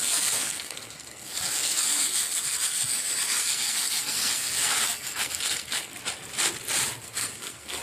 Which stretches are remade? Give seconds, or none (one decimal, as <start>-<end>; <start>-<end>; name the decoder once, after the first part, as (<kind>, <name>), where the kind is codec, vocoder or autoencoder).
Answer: 0.0-5.9 (codec, SNAC); 7.0-7.8